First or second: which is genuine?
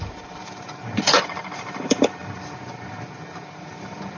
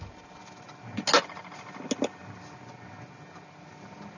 second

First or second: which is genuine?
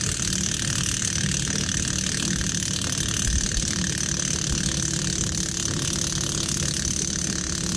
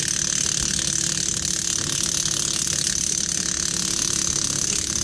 second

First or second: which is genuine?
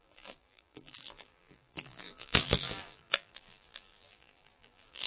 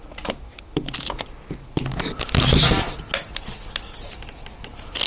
second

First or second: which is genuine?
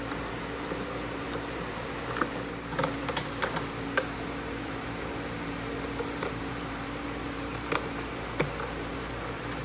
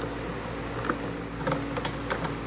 second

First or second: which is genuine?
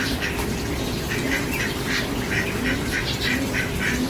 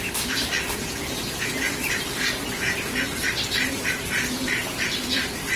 first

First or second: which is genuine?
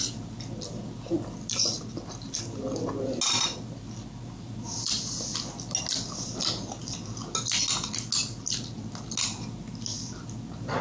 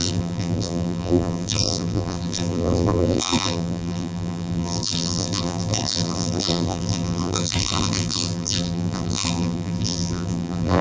first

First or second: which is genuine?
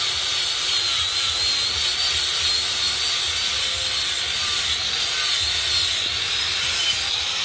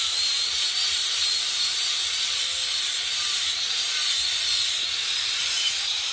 first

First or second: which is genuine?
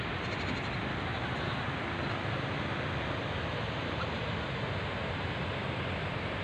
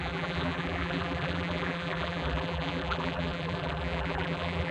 first